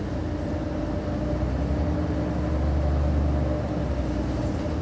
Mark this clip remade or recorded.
recorded